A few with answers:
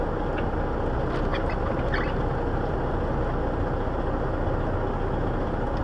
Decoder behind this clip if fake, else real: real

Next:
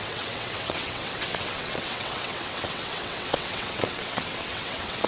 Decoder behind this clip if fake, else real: fake, vocoder, WaveNeXt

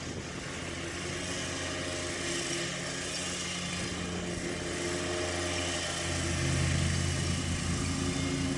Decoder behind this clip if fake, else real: real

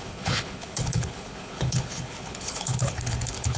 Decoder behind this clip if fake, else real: fake, codec, HILCodec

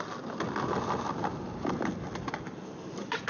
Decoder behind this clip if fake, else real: real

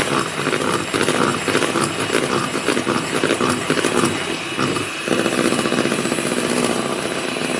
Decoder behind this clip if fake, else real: real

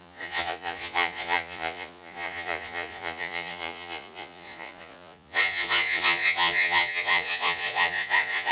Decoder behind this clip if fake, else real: fake, vocoder, Vocos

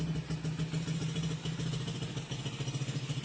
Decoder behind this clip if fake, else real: real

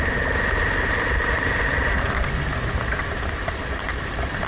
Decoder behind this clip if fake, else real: real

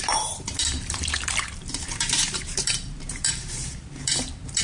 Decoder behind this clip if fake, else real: fake, vocoder, BigVGAN v2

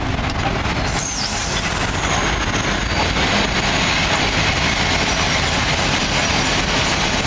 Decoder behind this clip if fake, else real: real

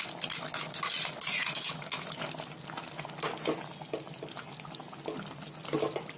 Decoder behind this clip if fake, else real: real